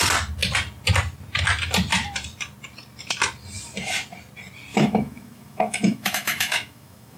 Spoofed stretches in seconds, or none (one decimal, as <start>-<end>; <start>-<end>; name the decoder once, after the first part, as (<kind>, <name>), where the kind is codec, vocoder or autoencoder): 4.7-7.2 (autoencoder, DAC-VAE)